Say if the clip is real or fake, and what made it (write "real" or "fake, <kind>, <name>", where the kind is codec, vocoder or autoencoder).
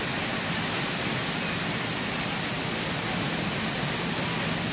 real